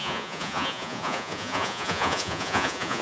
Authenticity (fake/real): fake